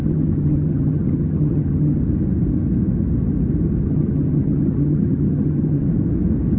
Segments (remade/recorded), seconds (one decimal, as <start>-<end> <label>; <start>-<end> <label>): 0.0-2.0 remade; 2.0-3.8 recorded; 3.8-5.9 remade; 5.9-6.6 recorded